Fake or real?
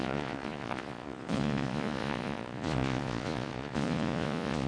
fake